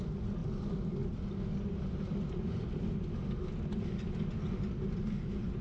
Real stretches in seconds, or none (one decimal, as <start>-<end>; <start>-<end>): 0.0-5.6